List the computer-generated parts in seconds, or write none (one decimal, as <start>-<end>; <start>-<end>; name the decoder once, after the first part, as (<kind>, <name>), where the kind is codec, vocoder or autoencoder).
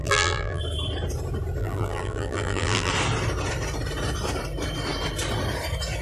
0.0-0.6 (vocoder, BigVGAN v2); 1.6-2.9